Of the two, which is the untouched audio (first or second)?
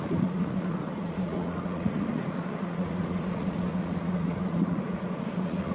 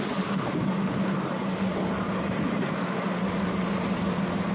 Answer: second